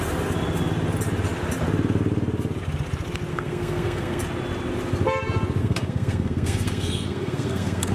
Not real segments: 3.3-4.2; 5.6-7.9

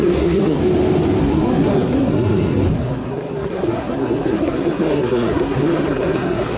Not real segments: 0.0-0.6; 1.2-6.6

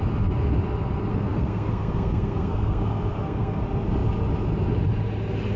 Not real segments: 1.1-3.6

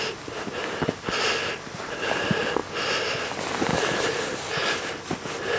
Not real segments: none

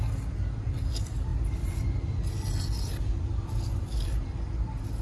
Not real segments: none

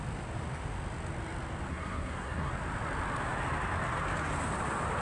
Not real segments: 1.7-2.5

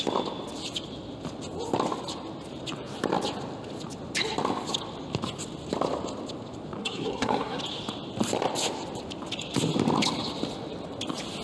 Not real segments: 6.8-7.6

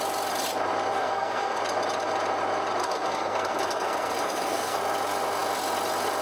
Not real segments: 1.0-1.6; 2.8-4.8